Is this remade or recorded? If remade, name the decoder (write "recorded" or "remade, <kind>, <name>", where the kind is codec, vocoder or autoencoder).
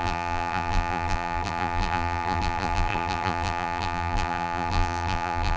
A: remade, vocoder, BigVGAN v2